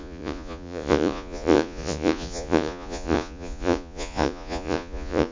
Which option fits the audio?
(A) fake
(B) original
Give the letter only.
A